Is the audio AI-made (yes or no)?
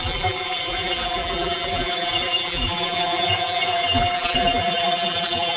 yes